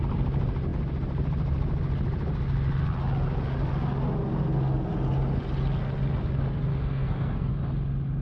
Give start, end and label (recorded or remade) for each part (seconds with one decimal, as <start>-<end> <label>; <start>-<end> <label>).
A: 0.0-6.7 recorded; 6.7-7.5 remade; 7.5-8.2 recorded